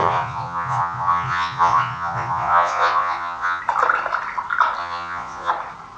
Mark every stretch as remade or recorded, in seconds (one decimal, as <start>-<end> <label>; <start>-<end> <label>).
0.0-3.6 remade; 3.6-4.8 recorded; 4.8-5.5 remade; 5.5-6.0 recorded